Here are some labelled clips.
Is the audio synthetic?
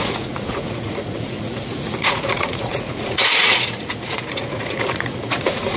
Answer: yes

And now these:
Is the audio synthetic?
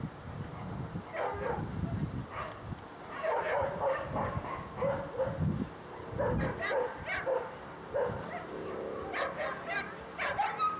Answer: no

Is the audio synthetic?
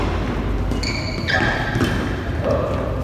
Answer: no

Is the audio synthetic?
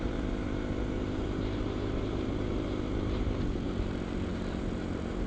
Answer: yes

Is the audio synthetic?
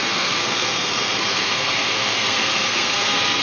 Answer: yes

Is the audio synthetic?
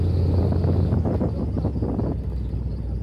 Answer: no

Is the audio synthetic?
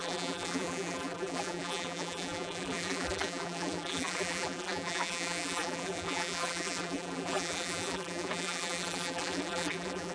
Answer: yes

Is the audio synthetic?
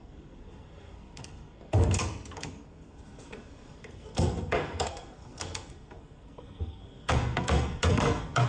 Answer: yes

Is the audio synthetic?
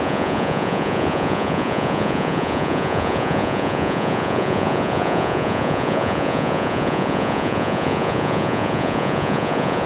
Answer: yes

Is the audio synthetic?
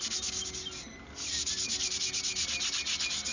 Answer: no